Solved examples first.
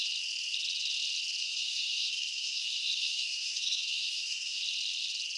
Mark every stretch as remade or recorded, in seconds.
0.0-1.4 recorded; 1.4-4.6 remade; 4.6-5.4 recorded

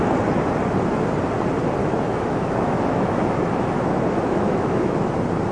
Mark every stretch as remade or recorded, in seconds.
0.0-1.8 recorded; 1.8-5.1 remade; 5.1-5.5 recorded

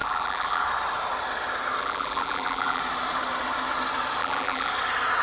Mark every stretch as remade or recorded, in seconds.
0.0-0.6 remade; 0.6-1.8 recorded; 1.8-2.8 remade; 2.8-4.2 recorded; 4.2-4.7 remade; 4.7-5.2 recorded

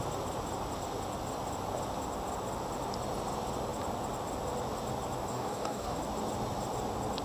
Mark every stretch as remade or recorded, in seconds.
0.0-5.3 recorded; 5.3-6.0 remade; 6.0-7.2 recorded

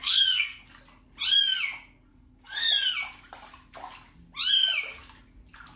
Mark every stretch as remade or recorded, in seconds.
0.0-0.7 remade; 0.7-2.1 recorded; 2.1-2.7 remade; 2.7-5.8 recorded

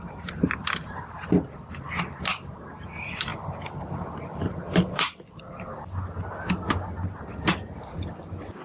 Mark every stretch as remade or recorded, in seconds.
0.0-8.6 recorded